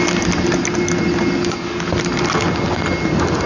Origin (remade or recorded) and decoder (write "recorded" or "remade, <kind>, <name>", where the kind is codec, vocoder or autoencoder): recorded